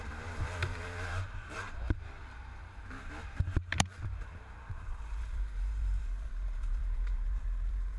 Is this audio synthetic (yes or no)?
yes